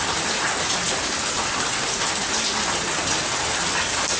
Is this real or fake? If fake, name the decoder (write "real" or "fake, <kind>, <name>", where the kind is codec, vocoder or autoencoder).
real